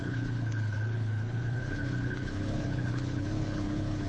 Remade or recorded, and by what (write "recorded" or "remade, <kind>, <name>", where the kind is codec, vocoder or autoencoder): remade, codec, HILCodec